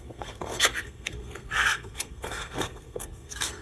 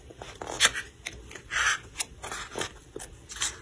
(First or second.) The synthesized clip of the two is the first